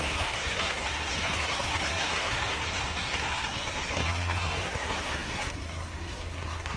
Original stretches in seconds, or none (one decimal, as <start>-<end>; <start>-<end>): none